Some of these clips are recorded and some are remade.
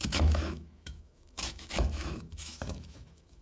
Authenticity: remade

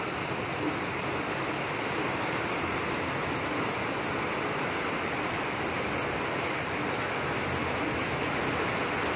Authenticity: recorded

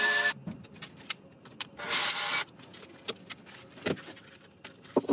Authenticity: recorded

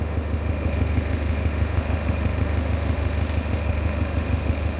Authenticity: remade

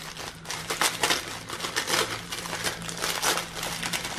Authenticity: recorded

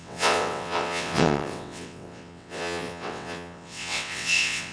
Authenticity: remade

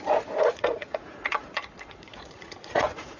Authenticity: remade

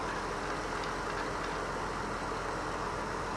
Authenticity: recorded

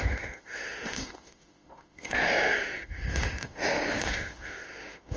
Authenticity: remade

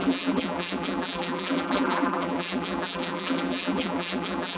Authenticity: remade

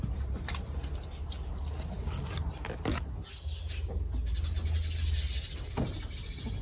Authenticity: recorded